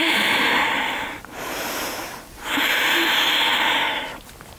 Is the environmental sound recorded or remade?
remade